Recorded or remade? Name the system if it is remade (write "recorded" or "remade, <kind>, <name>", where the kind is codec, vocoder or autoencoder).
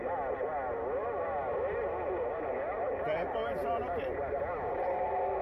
recorded